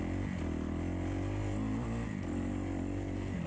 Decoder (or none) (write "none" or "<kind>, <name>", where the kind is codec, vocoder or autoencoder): none